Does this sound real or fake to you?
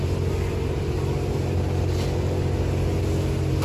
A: real